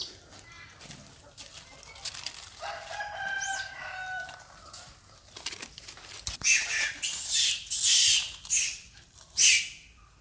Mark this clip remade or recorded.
recorded